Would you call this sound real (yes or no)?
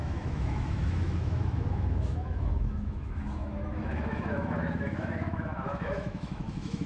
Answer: no